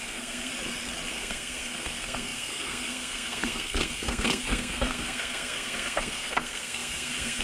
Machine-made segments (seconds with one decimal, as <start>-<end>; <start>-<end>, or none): 0.0-0.5; 1.1-7.4